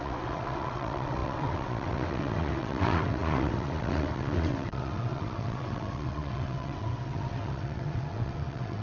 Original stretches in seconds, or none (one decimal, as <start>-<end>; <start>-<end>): none